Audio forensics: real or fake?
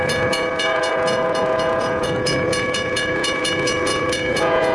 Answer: fake